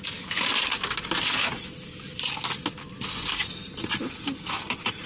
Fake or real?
real